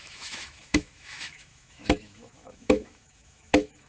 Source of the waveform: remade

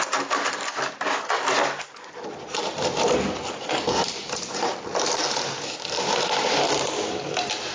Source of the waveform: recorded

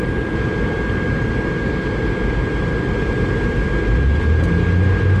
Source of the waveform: recorded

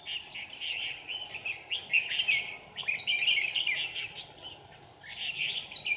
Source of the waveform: recorded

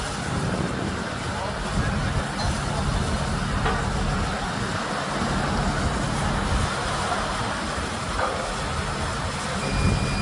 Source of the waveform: recorded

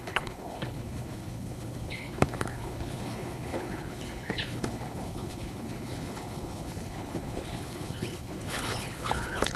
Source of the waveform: remade